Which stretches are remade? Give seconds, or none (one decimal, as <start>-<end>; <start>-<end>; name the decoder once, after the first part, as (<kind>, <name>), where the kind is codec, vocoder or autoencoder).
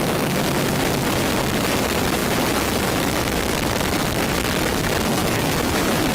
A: 5.2-6.1 (autoencoder, DAC-VAE)